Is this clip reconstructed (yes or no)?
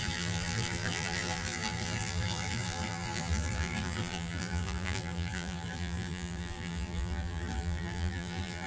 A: yes